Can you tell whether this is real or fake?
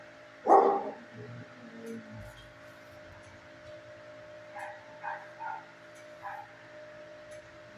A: real